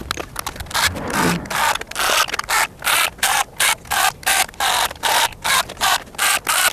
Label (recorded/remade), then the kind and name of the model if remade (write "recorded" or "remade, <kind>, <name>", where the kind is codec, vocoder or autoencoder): recorded